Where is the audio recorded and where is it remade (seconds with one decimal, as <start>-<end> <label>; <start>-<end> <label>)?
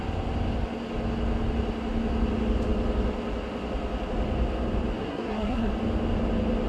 0.0-5.0 recorded; 5.0-5.7 remade; 5.7-6.7 recorded